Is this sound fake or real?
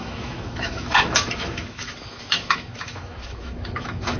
fake